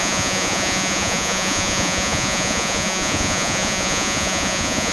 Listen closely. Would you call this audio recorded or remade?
remade